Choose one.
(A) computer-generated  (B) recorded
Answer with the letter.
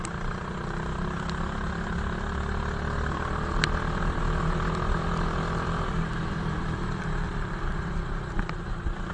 B